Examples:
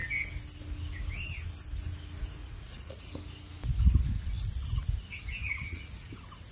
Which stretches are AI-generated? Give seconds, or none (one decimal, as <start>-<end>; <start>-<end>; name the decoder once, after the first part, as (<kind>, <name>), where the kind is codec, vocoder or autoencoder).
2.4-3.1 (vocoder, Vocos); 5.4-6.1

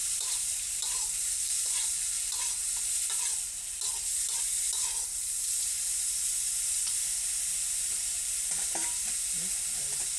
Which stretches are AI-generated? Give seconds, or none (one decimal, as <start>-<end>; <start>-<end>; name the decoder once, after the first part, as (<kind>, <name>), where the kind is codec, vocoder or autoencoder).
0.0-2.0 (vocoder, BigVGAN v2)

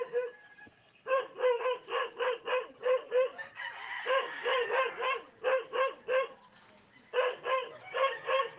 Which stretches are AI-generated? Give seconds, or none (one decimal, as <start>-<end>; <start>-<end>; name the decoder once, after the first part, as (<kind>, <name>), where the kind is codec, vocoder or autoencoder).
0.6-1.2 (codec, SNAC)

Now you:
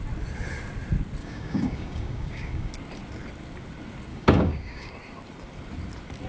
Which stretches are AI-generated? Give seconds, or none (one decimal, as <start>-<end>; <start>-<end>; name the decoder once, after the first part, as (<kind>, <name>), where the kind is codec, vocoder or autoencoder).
1.2-2.7 (codec, DAC); 4.1-4.9

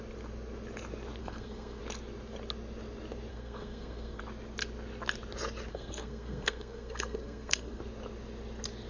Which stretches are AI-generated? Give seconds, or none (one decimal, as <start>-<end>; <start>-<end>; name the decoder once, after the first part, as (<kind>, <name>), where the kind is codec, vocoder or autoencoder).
1.2-1.8 (codec, SNAC); 3.3-4.2; 5.7-7.8